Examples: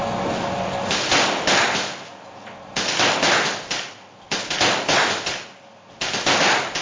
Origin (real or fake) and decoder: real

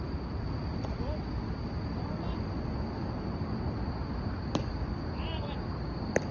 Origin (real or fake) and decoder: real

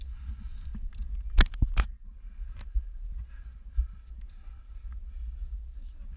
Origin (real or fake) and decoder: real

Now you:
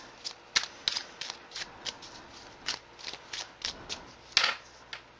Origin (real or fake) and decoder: real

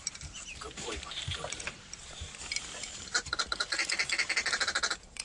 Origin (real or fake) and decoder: fake, vocoder, BigVGAN v2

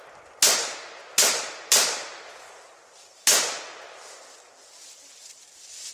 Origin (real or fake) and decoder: fake, vocoder, BigVGAN v2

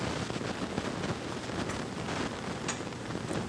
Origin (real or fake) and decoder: real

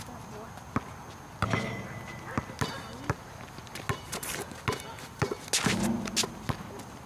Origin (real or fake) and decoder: real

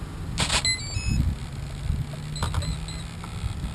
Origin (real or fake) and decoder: real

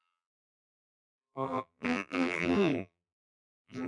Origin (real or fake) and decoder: fake, vocoder, BigVGAN v2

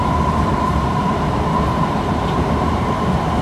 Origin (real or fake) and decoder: fake, vocoder, BigVGAN v2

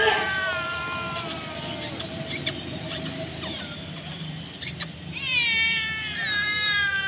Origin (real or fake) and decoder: fake, vocoder, BigVGAN v2